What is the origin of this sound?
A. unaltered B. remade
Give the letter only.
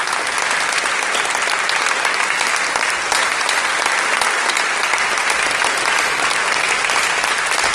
A